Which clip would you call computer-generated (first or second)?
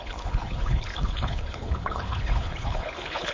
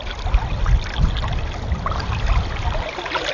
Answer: first